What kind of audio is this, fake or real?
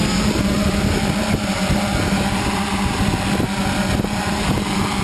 real